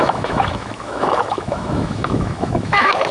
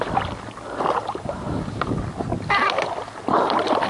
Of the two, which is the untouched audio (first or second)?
second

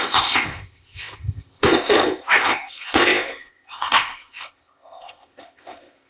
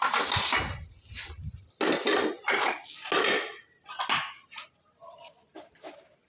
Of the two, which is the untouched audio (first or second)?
second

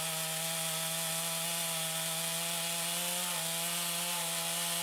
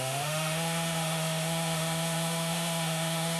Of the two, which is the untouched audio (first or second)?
first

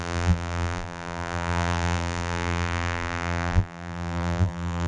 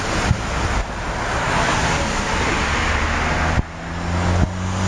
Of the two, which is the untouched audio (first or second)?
second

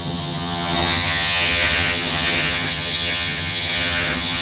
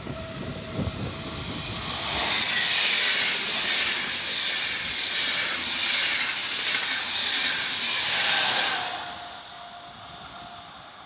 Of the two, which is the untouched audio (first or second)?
second